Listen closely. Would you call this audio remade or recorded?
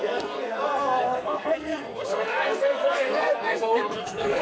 remade